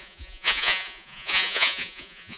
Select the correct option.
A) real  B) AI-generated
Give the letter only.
B